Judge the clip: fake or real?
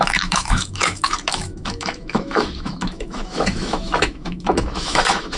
fake